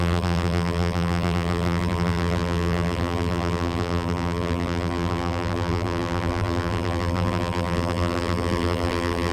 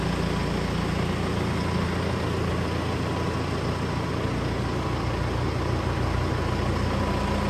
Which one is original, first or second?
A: second